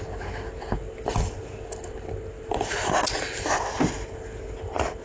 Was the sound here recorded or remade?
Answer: recorded